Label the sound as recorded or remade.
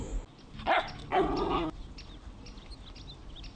recorded